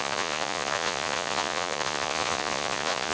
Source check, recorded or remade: remade